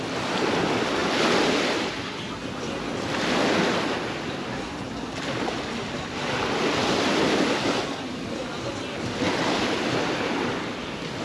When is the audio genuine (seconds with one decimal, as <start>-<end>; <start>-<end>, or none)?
0.0-11.2

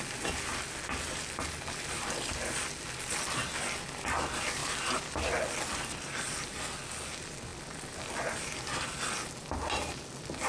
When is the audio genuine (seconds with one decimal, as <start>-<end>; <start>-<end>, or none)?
0.0-10.5